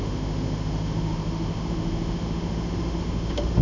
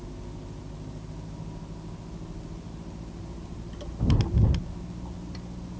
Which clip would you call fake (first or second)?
first